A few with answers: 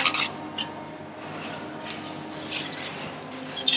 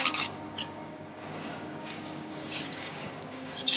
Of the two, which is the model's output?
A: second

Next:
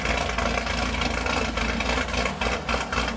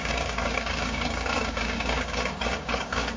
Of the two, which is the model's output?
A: second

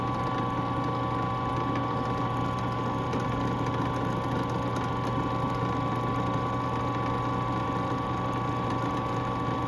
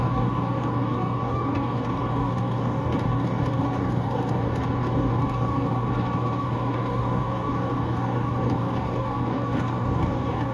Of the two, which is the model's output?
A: second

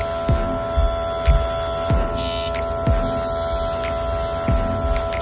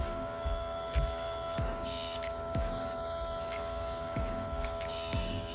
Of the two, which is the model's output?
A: second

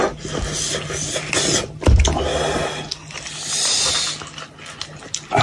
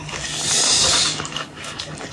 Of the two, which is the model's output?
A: second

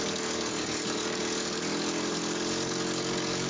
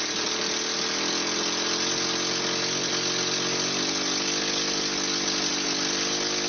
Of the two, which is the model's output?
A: first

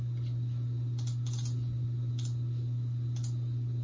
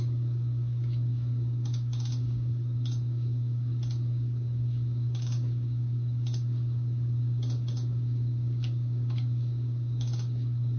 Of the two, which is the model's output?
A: second